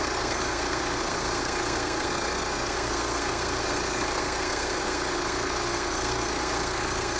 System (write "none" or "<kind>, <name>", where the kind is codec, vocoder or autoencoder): codec, SNAC